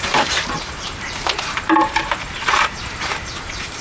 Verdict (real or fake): fake